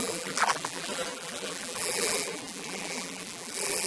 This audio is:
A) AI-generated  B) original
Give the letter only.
A